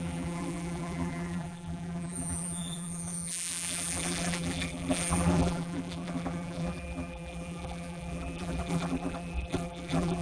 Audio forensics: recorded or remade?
remade